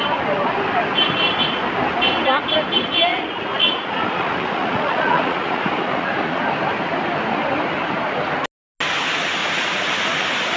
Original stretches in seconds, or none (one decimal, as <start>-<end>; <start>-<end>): 0.0-3.1; 6.4-9.4; 9.9-10.6

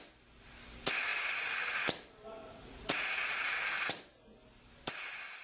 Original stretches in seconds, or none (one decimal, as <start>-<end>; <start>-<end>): 0.0-2.4; 3.9-5.4

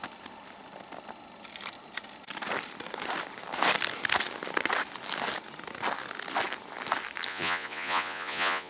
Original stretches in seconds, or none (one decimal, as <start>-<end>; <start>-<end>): 0.0-7.3